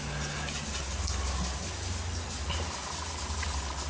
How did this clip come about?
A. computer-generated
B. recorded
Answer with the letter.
B